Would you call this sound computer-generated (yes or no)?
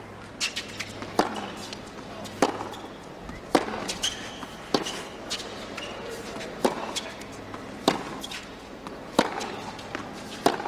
no